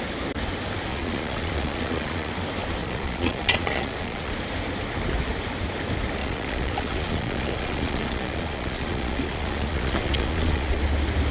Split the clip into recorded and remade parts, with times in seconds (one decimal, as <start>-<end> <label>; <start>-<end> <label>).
0.0-0.9 recorded; 0.9-2.3 remade; 2.3-2.8 recorded; 2.8-4.3 remade; 4.3-6.2 recorded; 6.2-10.8 remade; 10.8-11.3 recorded

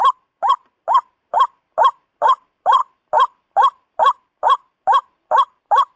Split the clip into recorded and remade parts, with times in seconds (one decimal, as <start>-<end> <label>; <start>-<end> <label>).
0.0-6.0 remade

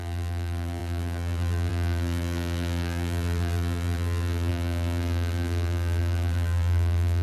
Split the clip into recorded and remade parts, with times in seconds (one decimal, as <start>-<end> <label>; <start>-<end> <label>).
0.0-7.2 remade

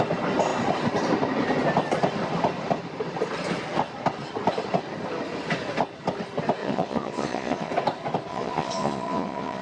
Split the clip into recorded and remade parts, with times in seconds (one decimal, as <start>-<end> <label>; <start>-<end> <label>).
0.0-6.6 recorded; 6.6-7.7 remade; 7.7-8.3 recorded; 8.3-9.6 remade

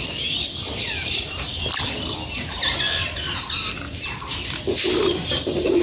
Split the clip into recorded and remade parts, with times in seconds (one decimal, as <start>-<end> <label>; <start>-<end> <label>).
0.0-1.5 remade; 1.5-5.0 recorded; 5.0-5.8 remade

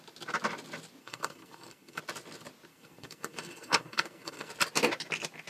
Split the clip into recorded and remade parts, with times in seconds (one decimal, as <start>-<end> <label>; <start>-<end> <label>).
0.0-1.0 recorded; 1.0-2.0 remade; 2.0-2.7 recorded; 2.7-4.5 remade; 4.5-5.5 recorded

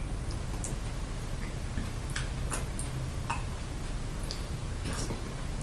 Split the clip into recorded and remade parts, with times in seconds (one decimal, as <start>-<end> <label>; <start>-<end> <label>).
0.0-5.6 recorded

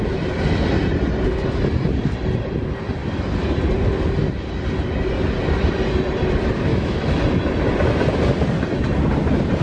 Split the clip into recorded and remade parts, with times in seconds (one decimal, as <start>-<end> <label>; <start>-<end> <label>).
0.0-6.7 recorded; 6.7-7.2 remade; 7.2-9.6 recorded